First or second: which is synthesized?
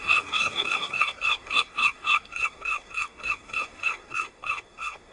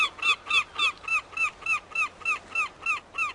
first